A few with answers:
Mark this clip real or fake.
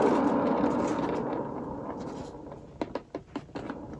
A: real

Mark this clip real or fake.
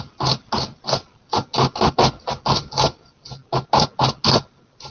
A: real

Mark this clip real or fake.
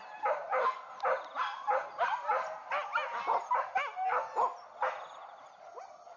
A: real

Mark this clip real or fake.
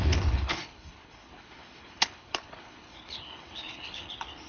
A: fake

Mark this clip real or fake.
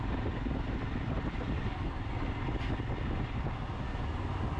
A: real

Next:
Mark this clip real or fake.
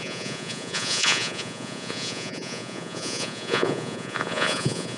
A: fake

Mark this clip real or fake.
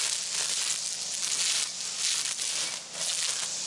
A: real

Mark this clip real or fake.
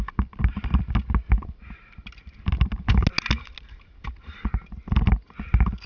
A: real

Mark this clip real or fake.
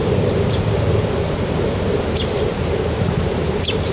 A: fake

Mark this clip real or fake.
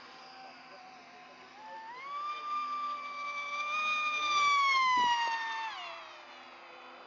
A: real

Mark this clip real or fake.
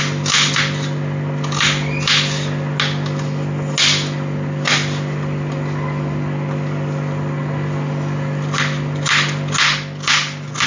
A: real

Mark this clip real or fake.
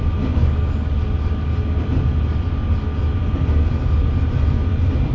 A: real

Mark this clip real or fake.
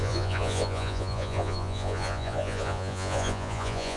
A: fake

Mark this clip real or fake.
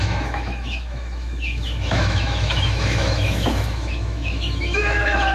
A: fake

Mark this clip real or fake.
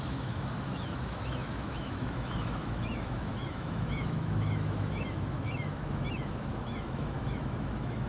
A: fake